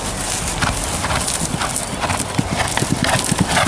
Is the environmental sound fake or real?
real